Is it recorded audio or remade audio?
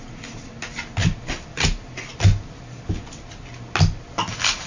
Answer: recorded